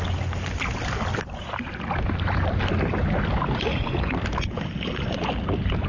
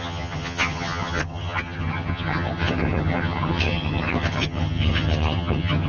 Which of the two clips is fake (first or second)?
second